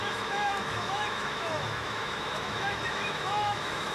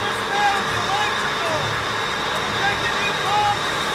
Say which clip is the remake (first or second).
first